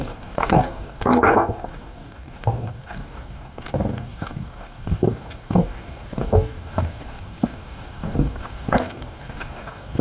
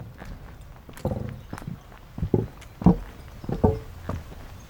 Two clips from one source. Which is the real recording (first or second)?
second